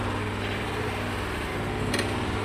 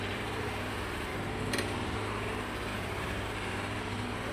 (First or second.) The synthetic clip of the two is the second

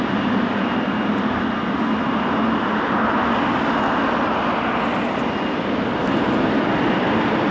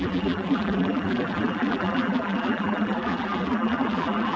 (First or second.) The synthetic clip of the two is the second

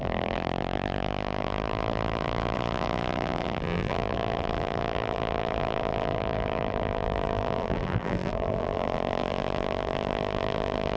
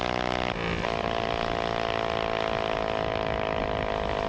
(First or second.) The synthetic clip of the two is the first